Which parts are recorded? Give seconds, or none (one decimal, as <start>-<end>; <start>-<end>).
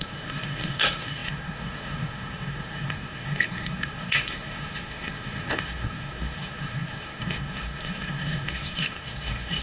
none